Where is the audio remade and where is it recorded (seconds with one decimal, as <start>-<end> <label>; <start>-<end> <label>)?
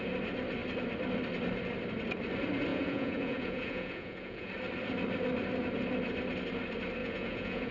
0.0-2.7 recorded; 2.7-4.5 remade; 4.5-7.0 recorded; 7.0-7.7 remade